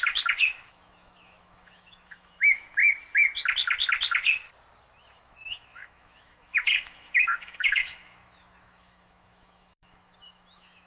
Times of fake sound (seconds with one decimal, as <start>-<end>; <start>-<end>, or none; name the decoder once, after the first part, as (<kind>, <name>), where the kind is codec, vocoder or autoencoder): 0.0-2.8 (autoencoder, DAC-VAE); 5.0-10.9